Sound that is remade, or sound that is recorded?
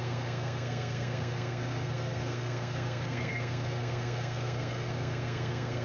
remade